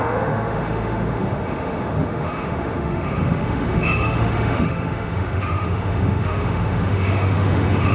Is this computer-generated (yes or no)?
yes